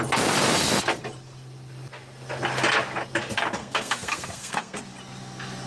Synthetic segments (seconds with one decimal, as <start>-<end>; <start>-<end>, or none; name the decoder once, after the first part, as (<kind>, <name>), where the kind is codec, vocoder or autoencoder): 3.6-4.8 (codec, SNAC)